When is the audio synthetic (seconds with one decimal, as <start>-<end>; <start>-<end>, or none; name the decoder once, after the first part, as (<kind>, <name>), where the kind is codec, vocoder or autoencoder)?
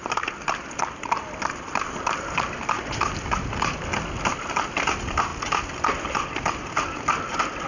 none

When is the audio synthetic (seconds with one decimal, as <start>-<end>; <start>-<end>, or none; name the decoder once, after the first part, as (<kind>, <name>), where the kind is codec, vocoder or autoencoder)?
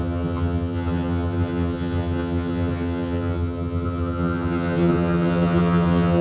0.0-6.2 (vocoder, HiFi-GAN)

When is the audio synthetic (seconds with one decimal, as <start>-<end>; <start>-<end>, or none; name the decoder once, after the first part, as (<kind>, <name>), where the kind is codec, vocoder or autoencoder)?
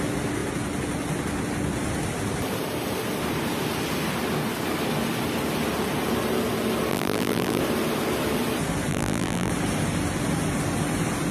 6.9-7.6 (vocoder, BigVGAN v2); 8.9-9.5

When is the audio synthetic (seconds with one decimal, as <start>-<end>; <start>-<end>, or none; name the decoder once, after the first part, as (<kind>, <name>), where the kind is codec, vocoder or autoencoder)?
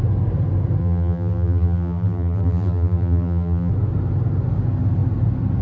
0.8-3.7 (vocoder, BigVGAN v2)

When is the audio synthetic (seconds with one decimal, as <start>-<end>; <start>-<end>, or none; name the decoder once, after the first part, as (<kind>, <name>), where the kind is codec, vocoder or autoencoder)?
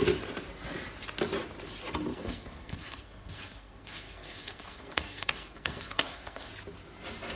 2.1-6.5 (codec, SNAC)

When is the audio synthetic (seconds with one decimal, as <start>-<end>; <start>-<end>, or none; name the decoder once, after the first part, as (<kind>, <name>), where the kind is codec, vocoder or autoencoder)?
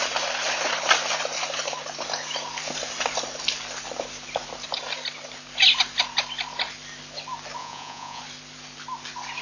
7.6-8.2 (vocoder, Vocos)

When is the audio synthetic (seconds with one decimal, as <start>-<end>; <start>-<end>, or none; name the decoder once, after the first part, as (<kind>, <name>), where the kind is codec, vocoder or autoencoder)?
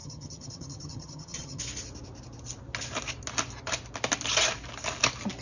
0.0-1.6 (vocoder, HiFi-GAN)